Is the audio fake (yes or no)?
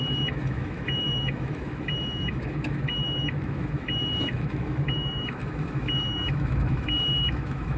yes